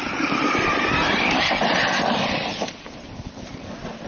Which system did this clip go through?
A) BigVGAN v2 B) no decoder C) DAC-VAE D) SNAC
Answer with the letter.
B